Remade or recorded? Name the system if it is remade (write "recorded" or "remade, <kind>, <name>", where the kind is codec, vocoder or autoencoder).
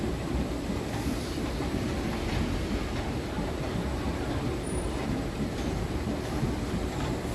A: recorded